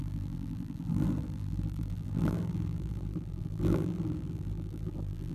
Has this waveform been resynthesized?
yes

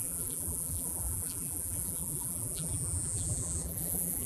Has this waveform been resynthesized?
yes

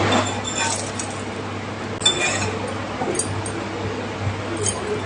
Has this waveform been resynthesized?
no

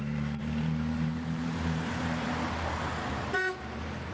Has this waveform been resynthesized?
yes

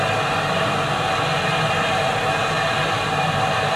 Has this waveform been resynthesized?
no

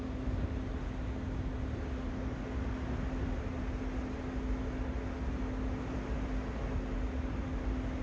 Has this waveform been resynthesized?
no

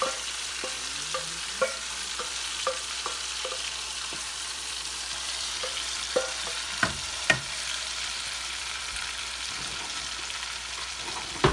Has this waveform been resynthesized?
yes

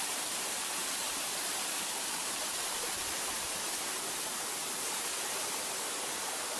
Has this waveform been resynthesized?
yes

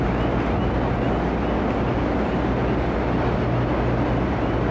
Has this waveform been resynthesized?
no